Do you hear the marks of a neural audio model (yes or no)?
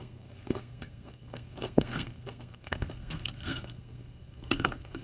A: yes